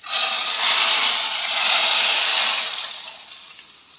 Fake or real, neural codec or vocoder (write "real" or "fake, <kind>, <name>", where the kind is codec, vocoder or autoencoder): real